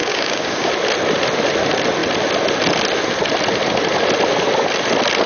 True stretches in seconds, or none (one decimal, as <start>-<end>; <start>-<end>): 0.7-5.3